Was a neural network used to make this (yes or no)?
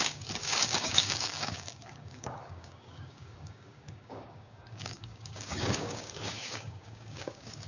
yes